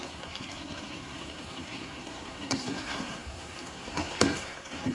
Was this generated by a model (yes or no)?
yes